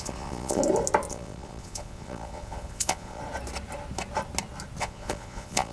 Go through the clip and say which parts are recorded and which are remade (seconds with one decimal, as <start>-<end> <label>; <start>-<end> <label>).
0.0-0.6 remade; 0.6-1.1 recorded; 1.1-3.2 remade; 3.2-4.8 recorded; 4.8-5.7 remade